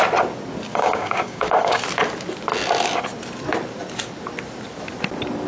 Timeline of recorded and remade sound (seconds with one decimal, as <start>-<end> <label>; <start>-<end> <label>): 0.0-0.7 recorded; 0.7-1.8 remade; 1.8-5.5 recorded